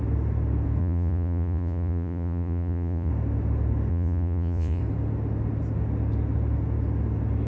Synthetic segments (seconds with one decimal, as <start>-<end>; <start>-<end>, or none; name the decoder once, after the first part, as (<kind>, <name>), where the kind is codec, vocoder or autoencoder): 0.8-3.1 (vocoder, Vocos); 3.9-4.8